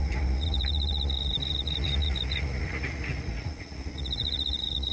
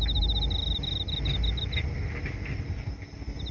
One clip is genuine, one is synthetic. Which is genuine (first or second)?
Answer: second